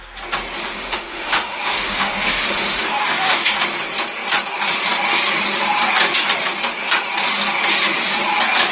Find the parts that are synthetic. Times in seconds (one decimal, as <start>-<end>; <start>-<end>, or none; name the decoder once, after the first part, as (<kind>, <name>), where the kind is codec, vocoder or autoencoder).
0.7-3.5 (autoencoder, DAC-VAE)